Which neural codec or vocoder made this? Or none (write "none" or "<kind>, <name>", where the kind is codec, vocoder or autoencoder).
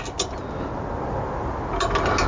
none